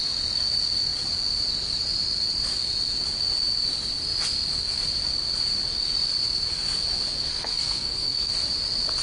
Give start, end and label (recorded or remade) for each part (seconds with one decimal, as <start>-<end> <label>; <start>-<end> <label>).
0.0-7.3 recorded; 7.3-8.3 remade; 8.3-9.0 recorded